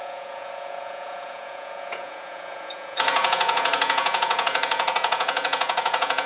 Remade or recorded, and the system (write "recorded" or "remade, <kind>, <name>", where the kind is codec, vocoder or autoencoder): remade, vocoder, Vocos